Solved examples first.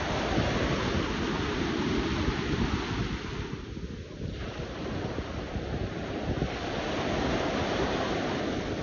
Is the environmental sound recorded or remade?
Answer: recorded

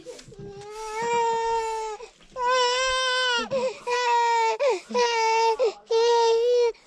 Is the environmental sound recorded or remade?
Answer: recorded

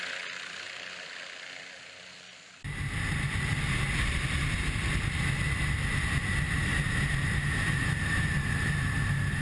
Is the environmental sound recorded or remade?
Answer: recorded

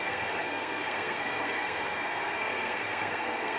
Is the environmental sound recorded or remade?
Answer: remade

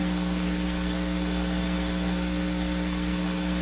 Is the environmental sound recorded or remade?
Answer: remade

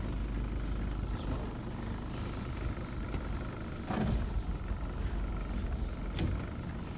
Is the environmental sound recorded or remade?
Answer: recorded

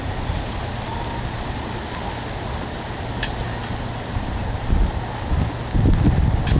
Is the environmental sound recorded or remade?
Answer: recorded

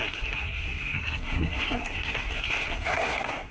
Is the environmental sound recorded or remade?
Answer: remade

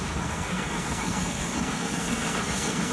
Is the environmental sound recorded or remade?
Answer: remade